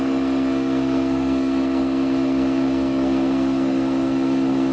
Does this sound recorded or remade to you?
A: remade